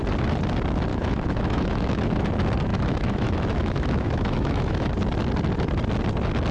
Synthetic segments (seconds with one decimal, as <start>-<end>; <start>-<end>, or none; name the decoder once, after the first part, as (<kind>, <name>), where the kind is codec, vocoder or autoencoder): 0.9-2.3 (autoencoder, DAC-VAE); 2.7-4.9